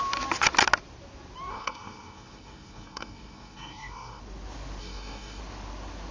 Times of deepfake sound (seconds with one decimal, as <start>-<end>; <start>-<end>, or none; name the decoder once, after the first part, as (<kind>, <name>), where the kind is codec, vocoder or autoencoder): 1.5-4.2 (codec, SNAC); 4.8-5.4